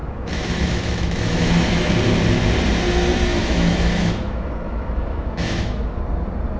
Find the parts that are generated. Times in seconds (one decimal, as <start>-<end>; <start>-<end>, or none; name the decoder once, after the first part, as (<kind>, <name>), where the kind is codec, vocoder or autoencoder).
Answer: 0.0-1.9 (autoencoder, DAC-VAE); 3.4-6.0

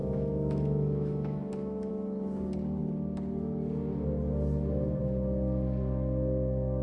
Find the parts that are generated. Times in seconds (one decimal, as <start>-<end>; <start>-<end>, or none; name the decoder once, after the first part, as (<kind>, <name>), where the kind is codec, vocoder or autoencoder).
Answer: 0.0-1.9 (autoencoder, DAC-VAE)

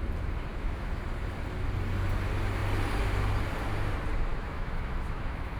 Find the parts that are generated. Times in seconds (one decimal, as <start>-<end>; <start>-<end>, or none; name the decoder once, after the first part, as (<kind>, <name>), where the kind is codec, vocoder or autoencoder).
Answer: 0.5-1.0 (autoencoder, DAC-VAE); 4.3-5.6